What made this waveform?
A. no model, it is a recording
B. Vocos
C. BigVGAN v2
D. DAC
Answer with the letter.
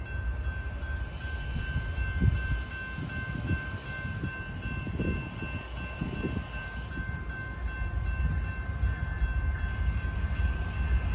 A